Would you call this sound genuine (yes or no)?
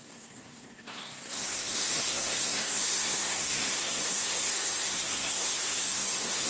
no